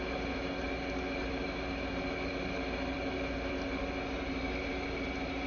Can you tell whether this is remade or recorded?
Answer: recorded